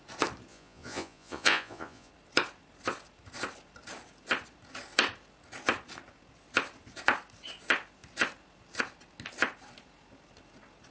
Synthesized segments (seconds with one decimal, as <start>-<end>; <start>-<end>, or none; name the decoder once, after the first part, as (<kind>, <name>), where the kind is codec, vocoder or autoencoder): 0.5-2.1 (vocoder, Vocos)